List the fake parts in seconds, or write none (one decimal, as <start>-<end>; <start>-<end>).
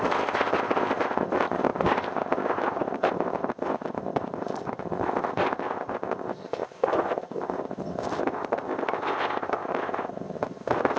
0.0-11.0